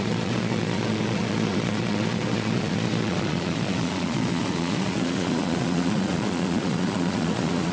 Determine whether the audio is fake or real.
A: fake